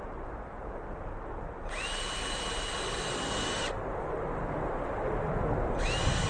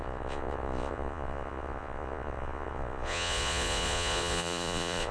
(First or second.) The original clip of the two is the first